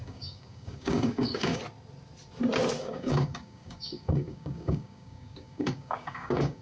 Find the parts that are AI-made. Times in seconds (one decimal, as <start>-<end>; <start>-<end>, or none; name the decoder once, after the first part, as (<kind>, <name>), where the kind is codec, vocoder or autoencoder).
0.0-1.6 (codec, DAC); 2.8-6.6

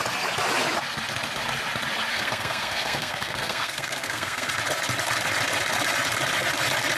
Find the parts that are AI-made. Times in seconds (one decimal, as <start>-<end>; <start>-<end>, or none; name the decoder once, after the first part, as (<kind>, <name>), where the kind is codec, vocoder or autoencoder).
2.1-4.5 (codec, SNAC)

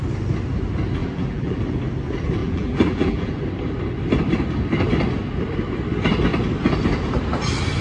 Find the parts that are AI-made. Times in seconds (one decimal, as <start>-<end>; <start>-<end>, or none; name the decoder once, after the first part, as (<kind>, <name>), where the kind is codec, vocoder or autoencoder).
1.0-1.6 (vocoder, BigVGAN v2); 2.4-3.4

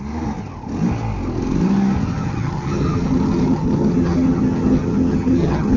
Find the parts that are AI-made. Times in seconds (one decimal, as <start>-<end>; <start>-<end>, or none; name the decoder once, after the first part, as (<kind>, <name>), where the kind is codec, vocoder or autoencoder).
2.1-5.8 (vocoder, HiFi-GAN)

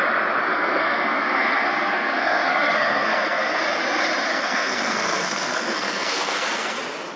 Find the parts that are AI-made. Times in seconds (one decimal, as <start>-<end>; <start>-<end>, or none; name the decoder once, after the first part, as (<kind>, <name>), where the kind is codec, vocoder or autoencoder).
0.5-3.6 (codec, SNAC); 4.3-6.8

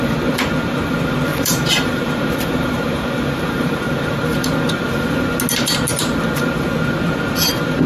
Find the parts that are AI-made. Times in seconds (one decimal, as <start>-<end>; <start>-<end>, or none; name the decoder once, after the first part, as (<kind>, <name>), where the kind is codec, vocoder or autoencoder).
1.3-4.5 (vocoder, BigVGAN v2)

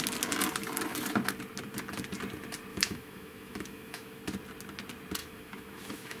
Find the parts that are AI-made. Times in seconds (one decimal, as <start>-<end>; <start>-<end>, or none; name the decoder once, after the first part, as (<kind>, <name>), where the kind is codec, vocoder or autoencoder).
2.7-4.2 (autoencoder, DAC-VAE); 5.2-6.2